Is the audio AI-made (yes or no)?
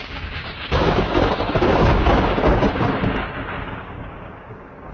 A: yes